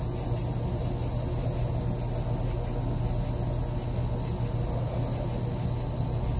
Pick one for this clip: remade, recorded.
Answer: recorded